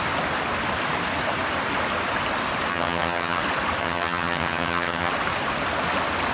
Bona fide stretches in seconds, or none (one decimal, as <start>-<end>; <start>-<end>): 0.0-2.7; 3.4-3.8; 5.1-6.3